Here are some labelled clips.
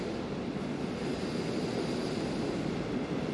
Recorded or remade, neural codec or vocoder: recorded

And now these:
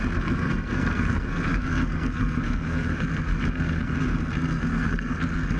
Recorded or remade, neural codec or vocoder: remade, codec, SNAC